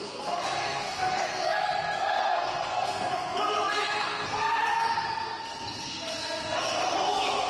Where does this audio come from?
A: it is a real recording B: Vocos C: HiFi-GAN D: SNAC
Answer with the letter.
D